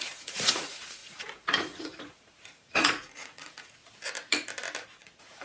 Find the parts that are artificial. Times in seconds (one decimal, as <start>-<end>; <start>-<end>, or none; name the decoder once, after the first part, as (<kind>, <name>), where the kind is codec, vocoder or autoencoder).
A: 0.0-3.8 (vocoder, Vocos); 4.8-5.4